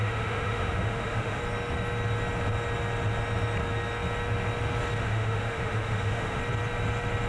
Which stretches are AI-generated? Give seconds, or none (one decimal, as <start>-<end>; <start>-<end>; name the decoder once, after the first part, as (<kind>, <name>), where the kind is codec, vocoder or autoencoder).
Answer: 0.0-1.4 (autoencoder, DAC-VAE); 5.0-6.4